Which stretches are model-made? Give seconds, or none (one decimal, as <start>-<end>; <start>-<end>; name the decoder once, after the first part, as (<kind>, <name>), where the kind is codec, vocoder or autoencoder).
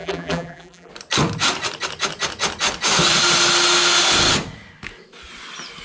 0.0-0.9 (vocoder, BigVGAN v2)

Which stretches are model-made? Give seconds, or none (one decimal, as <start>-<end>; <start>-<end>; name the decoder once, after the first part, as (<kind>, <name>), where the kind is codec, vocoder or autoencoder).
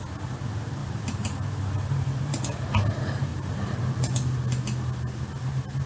0.8-2.4 (vocoder, BigVGAN v2); 3.3-3.8